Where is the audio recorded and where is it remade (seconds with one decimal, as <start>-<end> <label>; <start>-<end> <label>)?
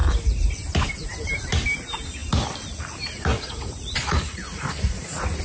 0.0-3.3 recorded; 3.3-5.4 remade